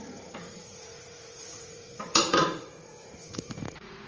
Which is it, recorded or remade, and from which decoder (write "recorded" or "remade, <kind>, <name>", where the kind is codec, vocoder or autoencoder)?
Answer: remade, vocoder, Vocos